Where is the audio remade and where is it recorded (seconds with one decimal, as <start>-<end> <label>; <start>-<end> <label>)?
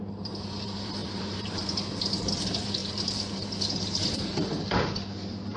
0.0-5.6 remade